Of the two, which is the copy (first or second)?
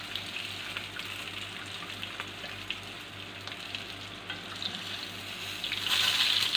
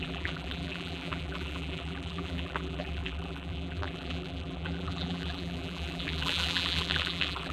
second